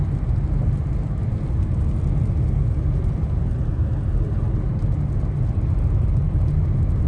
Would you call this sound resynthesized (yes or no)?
no